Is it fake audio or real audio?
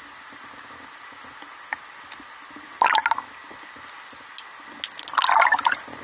real